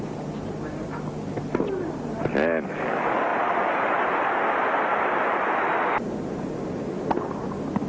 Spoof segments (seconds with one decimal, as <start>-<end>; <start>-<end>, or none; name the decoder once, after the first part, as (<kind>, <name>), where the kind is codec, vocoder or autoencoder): 3.3-4.0 (vocoder, BigVGAN v2)